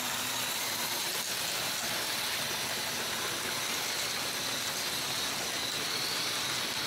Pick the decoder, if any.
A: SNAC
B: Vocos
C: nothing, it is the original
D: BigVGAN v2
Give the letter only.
C